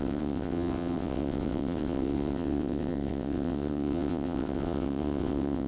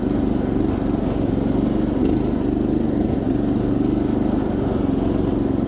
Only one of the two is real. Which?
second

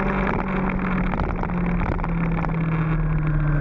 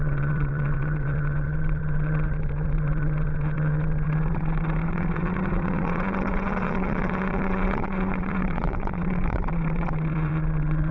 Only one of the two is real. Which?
first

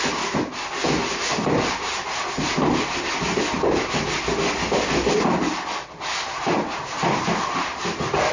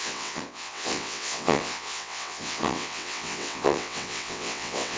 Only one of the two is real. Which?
first